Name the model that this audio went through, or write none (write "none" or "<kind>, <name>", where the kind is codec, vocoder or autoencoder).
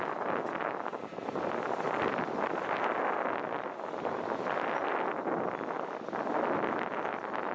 none